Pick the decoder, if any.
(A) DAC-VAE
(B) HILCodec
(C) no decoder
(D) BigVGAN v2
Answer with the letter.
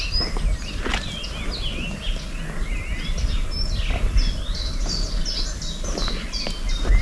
C